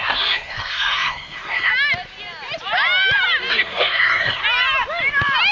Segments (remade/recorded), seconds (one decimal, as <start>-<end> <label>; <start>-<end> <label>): 0.0-1.7 remade; 1.7-3.5 recorded; 3.5-4.4 remade; 4.4-5.5 recorded